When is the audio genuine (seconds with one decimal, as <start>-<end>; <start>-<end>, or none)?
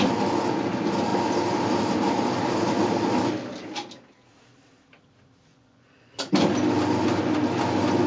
0.0-5.5; 6.3-8.1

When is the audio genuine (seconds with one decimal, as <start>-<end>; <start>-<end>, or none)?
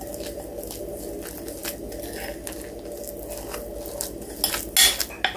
0.0-5.4